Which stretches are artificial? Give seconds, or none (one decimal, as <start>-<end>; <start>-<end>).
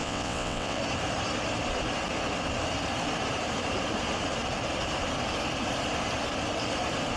0.0-0.8